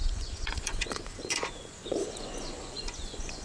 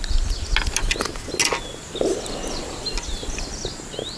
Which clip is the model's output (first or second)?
first